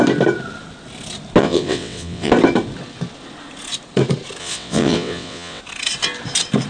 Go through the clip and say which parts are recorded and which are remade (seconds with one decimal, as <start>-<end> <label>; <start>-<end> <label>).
0.0-1.4 recorded; 1.4-2.3 remade; 2.3-4.4 recorded; 4.4-5.6 remade; 5.6-6.7 recorded